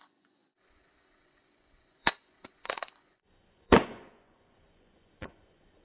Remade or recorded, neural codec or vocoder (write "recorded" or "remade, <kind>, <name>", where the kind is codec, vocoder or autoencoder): remade, vocoder, Vocos